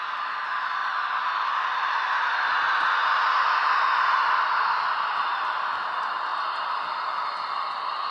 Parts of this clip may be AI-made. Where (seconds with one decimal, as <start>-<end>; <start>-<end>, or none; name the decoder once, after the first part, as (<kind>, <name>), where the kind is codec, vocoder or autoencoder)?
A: none